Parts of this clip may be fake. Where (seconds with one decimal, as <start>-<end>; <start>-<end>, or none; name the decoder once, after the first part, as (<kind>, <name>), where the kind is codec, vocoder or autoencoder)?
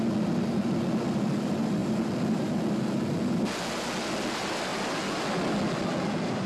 none